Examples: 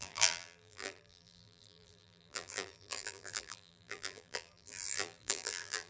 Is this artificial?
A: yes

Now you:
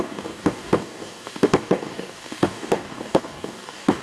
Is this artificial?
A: yes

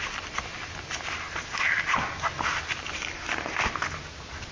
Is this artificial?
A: no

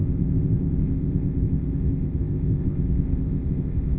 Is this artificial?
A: yes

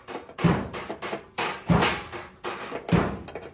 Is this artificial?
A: no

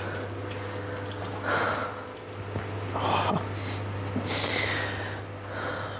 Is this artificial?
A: no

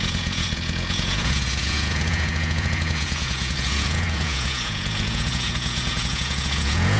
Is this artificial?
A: yes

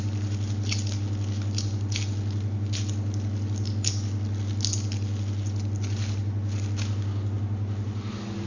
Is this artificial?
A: no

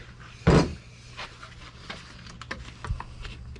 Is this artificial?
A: no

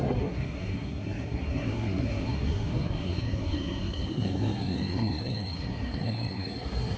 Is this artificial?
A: yes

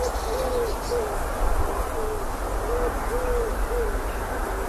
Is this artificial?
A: no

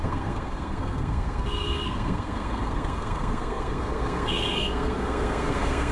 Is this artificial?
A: yes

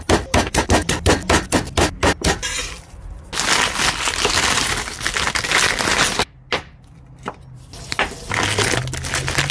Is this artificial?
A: no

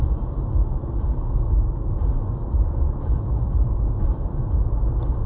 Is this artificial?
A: no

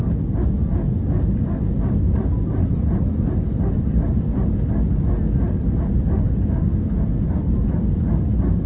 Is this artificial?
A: no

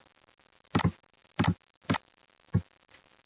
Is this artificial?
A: no